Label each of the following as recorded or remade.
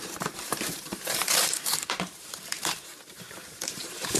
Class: remade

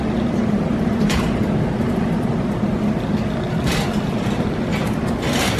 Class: recorded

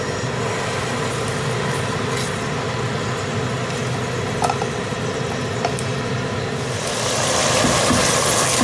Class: recorded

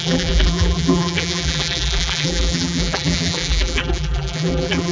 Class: remade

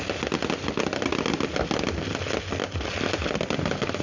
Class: recorded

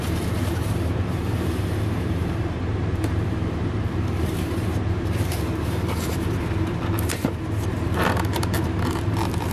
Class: remade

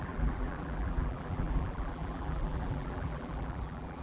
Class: remade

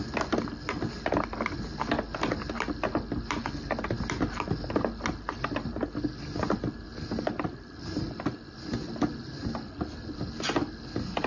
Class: recorded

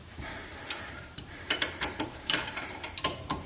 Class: remade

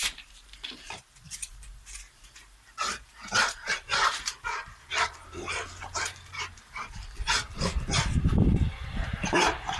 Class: remade